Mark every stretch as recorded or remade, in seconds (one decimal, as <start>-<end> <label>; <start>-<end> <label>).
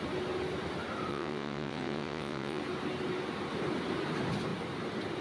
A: 0.0-1.1 recorded; 1.1-2.6 remade; 2.6-5.2 recorded